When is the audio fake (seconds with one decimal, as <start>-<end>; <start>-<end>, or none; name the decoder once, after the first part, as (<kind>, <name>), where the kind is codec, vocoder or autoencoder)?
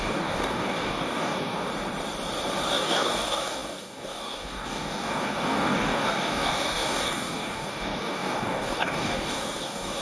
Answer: 0.0-1.7 (codec, DAC); 2.7-10.0